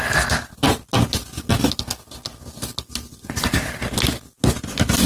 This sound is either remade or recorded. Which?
recorded